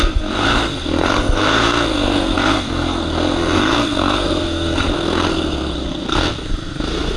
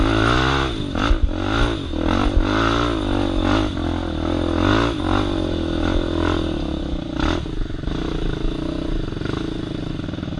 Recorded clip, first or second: second